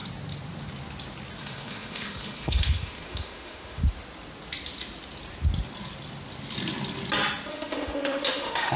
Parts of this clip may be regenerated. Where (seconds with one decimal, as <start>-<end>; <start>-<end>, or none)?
1.4-3.8; 7.5-8.8